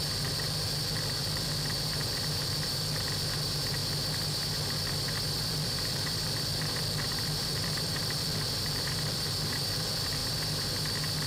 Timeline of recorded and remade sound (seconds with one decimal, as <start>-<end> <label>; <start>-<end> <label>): 0.0-3.8 remade; 3.8-5.4 recorded; 5.4-10.2 remade; 10.2-11.3 recorded